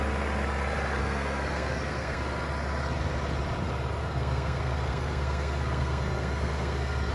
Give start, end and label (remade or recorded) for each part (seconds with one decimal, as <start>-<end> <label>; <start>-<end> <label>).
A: 0.0-1.0 recorded; 1.0-2.2 remade; 2.2-4.0 recorded; 4.0-7.1 remade